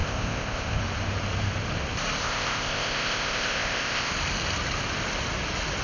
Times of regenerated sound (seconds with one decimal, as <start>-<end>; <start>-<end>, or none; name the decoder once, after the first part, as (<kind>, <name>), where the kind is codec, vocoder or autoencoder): 0.0-0.8 (codec, ZipCodec); 2.2-4.1

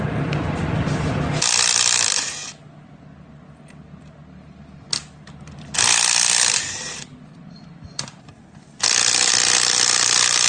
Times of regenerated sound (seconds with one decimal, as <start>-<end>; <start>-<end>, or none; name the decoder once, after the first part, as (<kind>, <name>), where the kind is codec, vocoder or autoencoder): none

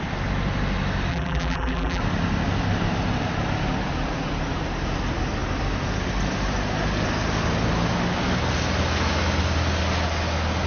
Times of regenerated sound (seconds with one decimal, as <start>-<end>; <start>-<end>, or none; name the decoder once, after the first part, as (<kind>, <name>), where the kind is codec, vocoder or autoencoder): 1.1-2.0 (vocoder, BigVGAN v2)

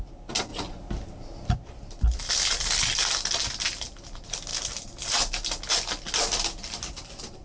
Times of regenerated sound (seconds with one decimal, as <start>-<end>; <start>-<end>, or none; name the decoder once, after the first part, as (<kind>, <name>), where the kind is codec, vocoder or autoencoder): none

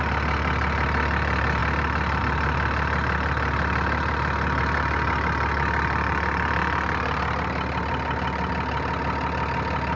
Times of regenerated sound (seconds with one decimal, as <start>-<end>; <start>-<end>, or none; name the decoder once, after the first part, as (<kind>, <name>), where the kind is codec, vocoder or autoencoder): none

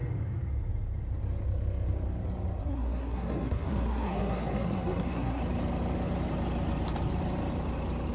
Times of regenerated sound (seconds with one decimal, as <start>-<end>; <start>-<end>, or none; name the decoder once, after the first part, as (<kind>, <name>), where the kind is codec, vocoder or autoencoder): 2.6-5.4 (codec, SNAC)

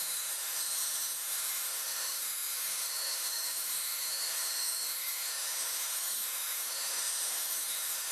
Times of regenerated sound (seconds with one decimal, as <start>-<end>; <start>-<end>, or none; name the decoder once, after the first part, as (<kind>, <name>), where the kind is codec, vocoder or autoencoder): 0.0-8.1 (autoencoder, DAC-VAE)

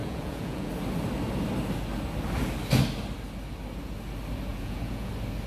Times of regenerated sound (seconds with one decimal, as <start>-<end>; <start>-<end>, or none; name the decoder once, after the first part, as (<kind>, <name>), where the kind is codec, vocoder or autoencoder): 0.0-0.7 (vocoder, Vocos); 4.5-5.1